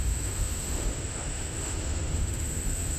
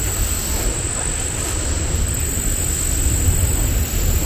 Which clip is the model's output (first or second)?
first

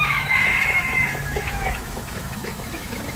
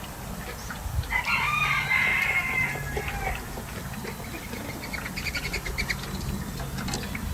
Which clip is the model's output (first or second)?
first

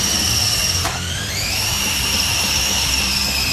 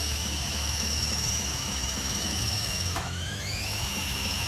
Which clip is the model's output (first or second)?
second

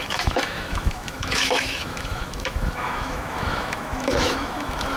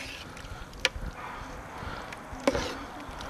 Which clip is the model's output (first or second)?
first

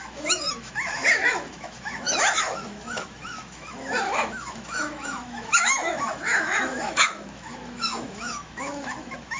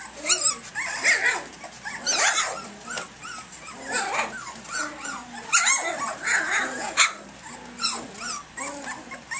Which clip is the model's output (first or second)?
first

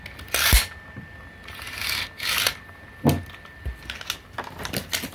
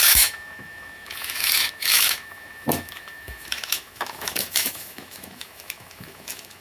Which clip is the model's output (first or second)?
second